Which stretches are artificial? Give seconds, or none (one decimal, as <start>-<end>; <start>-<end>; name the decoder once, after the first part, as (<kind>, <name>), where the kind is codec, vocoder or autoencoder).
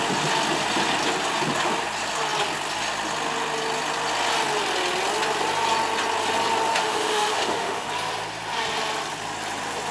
6.7-7.9 (autoencoder, DAC-VAE)